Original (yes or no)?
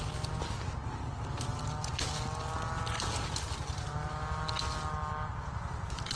yes